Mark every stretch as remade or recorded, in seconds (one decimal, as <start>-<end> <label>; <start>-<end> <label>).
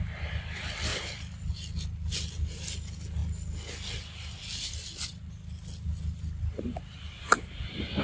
0.0-8.0 recorded